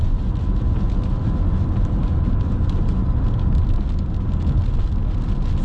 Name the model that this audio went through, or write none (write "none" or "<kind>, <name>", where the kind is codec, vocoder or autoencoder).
none